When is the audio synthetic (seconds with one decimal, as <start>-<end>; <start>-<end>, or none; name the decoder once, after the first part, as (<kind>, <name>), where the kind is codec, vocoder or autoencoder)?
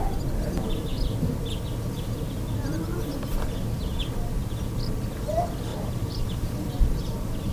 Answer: 5.7-6.7 (vocoder, BigVGAN v2)